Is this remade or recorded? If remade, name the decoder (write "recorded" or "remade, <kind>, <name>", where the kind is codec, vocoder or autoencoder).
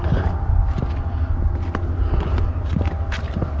recorded